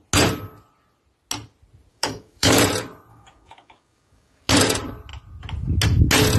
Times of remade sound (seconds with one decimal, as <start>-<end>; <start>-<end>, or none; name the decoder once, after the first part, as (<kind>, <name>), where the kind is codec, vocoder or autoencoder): 1.9-2.6 (codec, DAC); 3.1-4.5